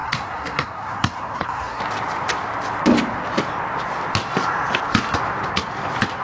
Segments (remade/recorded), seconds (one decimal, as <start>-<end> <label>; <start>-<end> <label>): 0.0-1.8 remade; 1.8-6.2 recorded